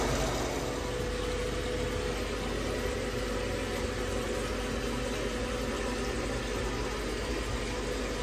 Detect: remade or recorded recorded